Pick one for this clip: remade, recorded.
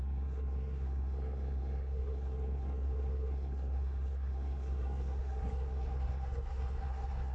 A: remade